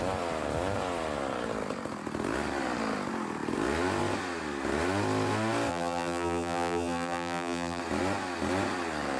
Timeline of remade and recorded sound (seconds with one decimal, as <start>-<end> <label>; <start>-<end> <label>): 0.0-5.7 recorded; 5.7-7.8 remade; 7.8-9.2 recorded